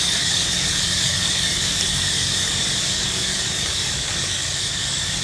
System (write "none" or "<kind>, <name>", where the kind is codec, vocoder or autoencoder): codec, DAC